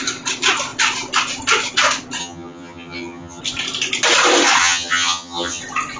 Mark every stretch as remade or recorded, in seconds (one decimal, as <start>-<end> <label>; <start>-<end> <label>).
0.0-2.2 recorded; 2.2-3.4 remade; 3.4-4.6 recorded; 4.6-5.6 remade; 5.6-6.0 recorded